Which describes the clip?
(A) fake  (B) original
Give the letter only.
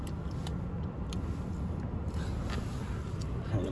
B